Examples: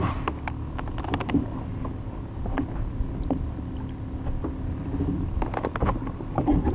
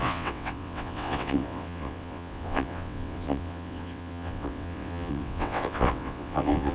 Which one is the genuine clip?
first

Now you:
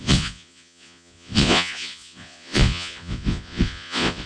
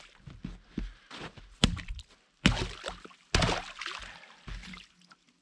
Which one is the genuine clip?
second